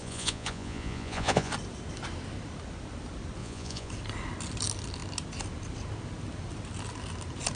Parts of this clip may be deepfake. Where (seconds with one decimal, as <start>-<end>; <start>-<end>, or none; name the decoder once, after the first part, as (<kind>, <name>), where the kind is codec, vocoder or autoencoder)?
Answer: 0.0-1.5 (vocoder, Vocos); 3.4-3.9